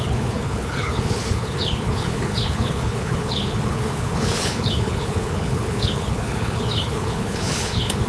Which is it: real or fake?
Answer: fake